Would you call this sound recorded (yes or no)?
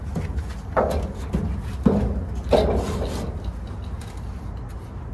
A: yes